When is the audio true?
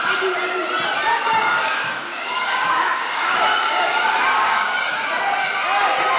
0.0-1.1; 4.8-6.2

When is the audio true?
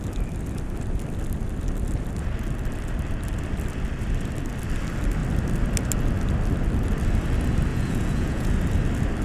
0.0-7.7; 8.5-9.2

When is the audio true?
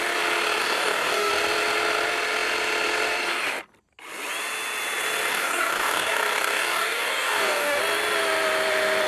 0.0-0.6; 1.3-5.3; 7.8-9.1